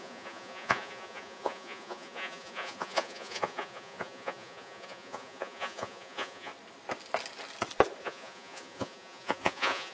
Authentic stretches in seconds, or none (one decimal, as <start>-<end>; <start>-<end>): 6.5-8.0